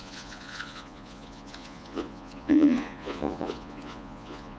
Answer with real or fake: fake